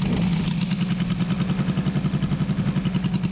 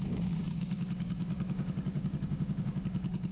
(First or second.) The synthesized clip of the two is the second